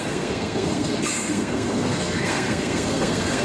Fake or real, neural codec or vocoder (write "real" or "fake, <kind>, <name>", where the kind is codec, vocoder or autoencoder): fake, codec, SNAC